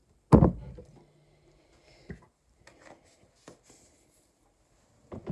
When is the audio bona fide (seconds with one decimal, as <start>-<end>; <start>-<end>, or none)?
0.0-5.3